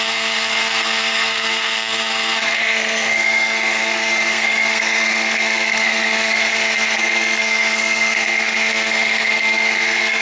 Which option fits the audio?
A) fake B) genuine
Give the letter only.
A